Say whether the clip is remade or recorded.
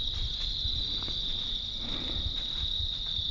recorded